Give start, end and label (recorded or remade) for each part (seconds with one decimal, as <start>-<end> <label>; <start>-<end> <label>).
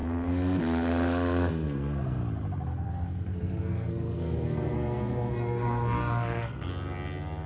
0.0-2.2 remade; 2.2-2.9 recorded; 2.9-6.7 remade; 6.7-7.5 recorded